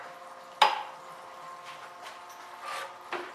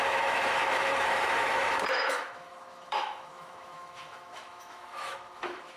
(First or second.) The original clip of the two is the first